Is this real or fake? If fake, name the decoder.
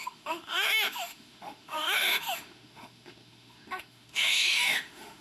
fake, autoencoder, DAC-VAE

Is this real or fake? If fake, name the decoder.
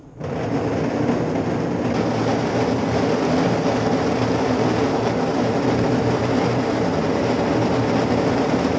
real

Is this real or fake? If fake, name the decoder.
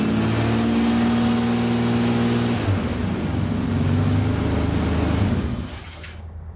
real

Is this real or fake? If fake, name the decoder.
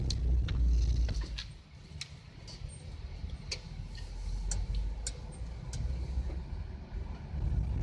real